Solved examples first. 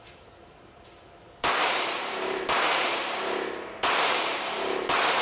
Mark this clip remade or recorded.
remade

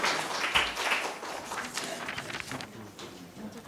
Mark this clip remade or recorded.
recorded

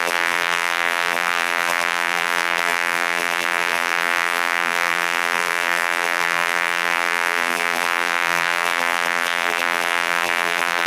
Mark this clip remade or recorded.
remade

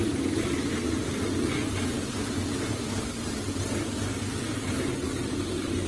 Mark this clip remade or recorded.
recorded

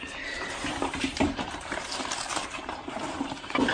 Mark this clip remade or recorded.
remade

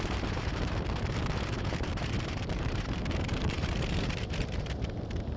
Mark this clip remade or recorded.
remade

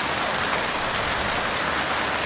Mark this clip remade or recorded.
recorded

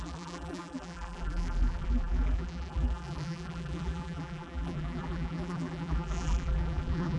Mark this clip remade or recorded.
remade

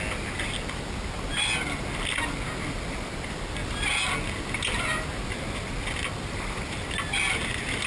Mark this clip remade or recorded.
recorded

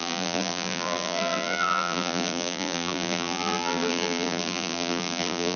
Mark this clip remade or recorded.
remade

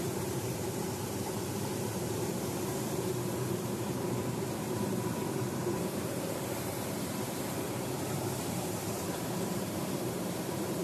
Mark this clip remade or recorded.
remade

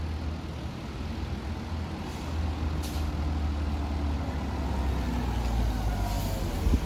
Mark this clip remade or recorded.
recorded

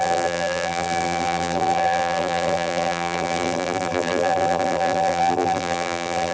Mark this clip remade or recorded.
remade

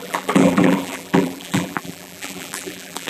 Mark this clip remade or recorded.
remade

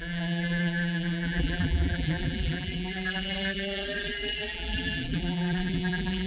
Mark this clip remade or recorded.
remade